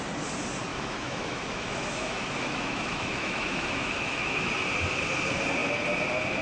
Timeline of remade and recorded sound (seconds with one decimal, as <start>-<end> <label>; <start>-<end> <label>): 0.0-0.7 recorded; 0.7-4.5 remade; 4.5-6.4 recorded